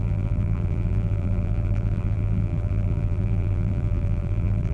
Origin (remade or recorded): remade